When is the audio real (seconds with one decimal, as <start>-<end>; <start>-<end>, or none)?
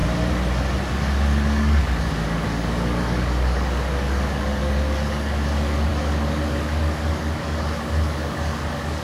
0.0-0.9